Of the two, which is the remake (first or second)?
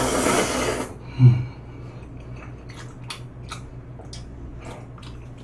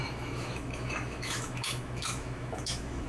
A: second